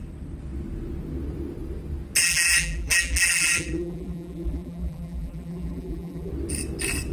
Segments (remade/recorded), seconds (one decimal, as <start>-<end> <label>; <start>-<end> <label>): 0.0-2.2 recorded; 2.2-6.3 remade; 6.3-7.1 recorded